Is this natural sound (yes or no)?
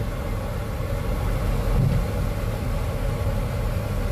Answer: yes